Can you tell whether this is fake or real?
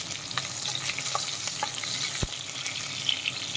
real